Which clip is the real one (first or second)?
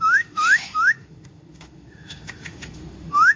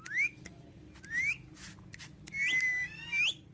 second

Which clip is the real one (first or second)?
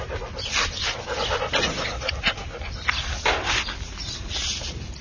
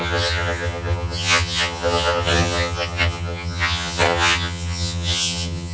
first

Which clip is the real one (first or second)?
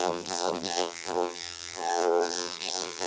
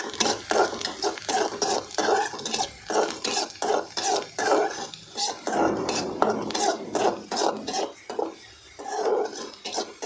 second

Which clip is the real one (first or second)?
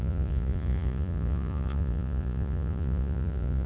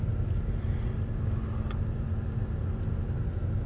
second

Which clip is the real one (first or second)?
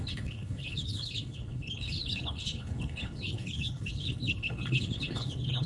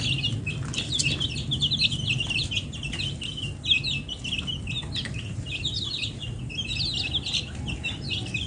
second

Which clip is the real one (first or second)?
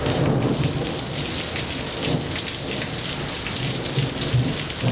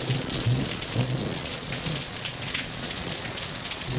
first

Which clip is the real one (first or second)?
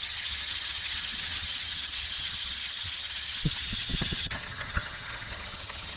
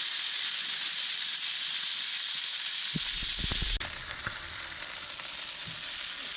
second